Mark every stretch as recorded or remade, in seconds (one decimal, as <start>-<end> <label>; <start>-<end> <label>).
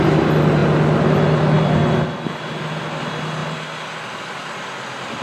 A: 0.0-5.2 recorded